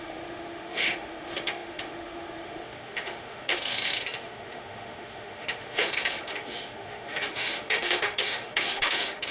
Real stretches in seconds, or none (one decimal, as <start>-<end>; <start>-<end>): none